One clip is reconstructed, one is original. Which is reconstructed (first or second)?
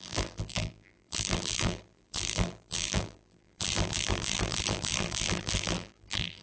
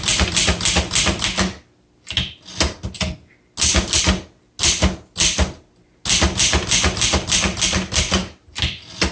first